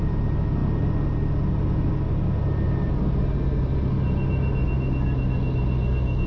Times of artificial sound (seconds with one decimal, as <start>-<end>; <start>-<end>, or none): none